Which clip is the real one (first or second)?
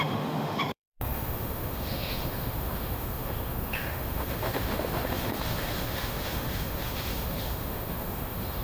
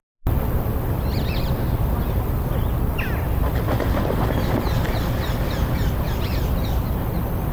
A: second